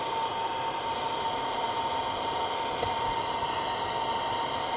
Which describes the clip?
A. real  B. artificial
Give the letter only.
A